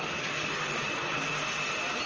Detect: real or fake real